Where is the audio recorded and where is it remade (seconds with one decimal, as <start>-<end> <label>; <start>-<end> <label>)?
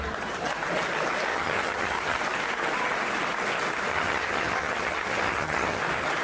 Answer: 0.0-1.3 recorded; 1.3-2.2 remade; 2.2-3.9 recorded; 3.9-5.8 remade; 5.8-6.2 recorded